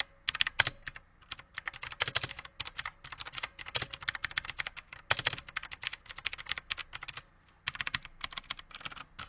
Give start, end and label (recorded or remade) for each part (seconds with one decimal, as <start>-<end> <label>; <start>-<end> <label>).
0.0-9.3 recorded